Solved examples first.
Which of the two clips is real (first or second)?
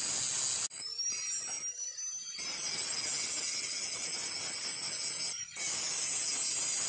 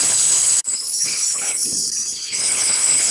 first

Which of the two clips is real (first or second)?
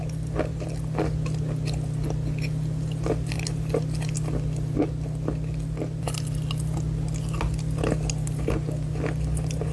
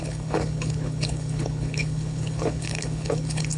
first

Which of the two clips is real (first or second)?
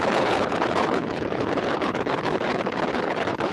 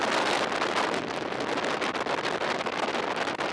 second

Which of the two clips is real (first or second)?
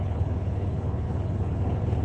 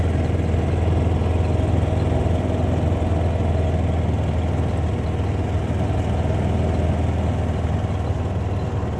second